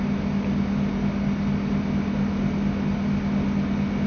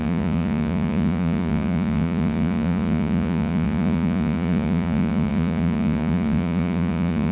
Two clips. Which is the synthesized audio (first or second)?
second